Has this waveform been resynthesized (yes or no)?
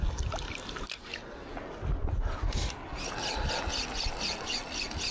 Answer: no